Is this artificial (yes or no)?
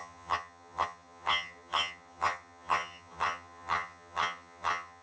yes